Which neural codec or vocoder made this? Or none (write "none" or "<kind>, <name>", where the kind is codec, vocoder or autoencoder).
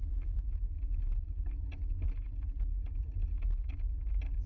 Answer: none